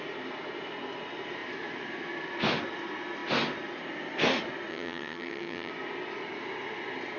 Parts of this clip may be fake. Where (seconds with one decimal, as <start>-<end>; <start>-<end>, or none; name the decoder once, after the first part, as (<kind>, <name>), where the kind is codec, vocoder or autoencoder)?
4.7-5.7 (vocoder, HiFi-GAN)